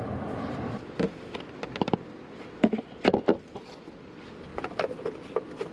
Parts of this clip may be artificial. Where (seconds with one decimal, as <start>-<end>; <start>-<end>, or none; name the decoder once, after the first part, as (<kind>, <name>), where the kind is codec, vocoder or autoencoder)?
none